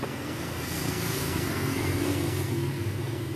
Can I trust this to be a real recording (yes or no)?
no